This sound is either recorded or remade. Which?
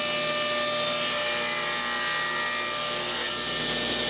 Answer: recorded